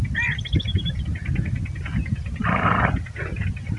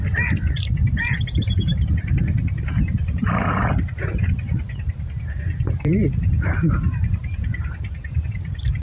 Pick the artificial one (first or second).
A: second